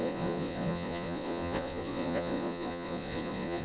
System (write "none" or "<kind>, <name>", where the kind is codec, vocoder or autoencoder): vocoder, Vocos